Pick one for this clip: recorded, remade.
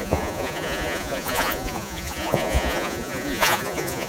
remade